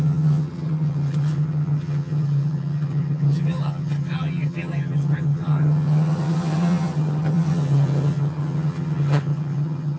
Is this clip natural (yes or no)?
no